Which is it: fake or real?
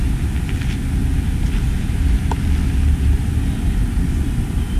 real